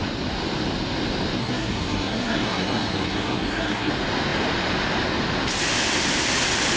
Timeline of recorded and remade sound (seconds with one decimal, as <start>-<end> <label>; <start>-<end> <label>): 0.0-1.4 recorded; 1.4-3.9 remade; 3.9-6.8 recorded